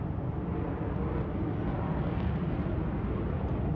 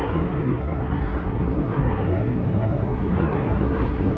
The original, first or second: first